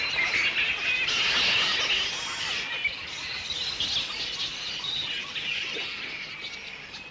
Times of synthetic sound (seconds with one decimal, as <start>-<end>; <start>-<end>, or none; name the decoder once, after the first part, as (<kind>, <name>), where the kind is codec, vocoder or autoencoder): 4.5-7.1 (vocoder, BigVGAN v2)